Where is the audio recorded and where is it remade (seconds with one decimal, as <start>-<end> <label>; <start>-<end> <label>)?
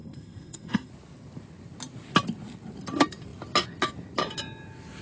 0.0-0.9 remade; 0.9-5.0 recorded